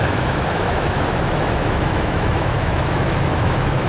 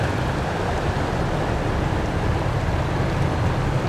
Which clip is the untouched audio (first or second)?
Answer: second